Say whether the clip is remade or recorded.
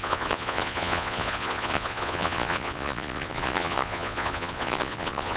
remade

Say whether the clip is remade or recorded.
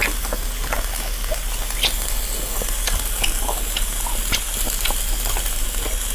recorded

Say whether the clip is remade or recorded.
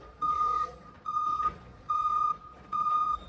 remade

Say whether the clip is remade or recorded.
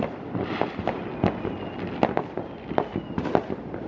recorded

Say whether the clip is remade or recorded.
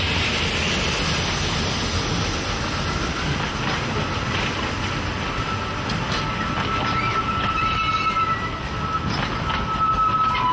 recorded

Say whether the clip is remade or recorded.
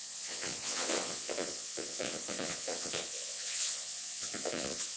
remade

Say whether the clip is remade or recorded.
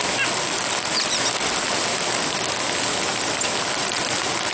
recorded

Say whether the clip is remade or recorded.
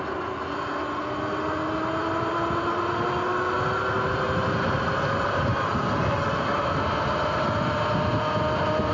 recorded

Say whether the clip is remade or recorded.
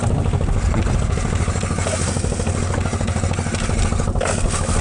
recorded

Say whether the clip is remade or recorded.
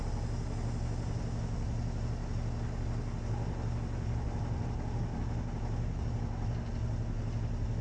recorded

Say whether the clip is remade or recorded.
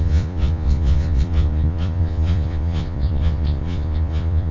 remade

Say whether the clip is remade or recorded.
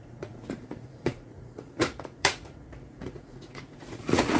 remade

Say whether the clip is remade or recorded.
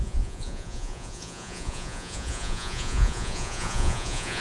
remade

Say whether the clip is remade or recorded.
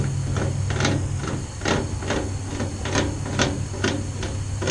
recorded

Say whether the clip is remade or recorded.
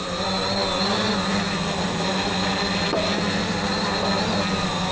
recorded